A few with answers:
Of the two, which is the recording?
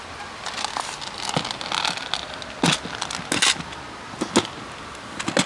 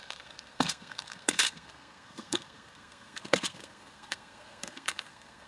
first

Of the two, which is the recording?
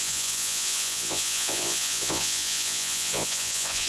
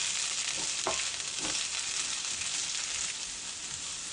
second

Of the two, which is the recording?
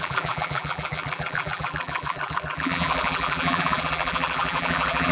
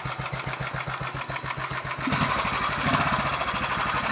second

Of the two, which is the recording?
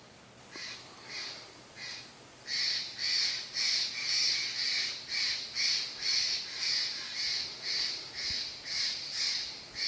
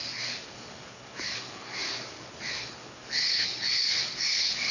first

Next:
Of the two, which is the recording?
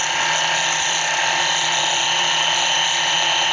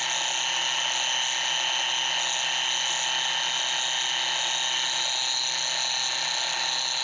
second